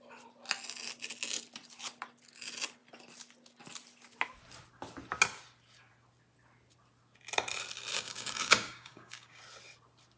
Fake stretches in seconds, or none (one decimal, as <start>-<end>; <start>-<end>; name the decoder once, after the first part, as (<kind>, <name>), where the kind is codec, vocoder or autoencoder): 7.9-9.4 (codec, DAC)